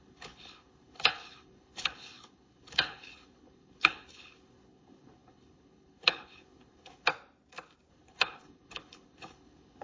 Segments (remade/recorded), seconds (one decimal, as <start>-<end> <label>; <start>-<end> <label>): 0.0-7.1 remade; 7.1-7.9 recorded; 7.9-9.8 remade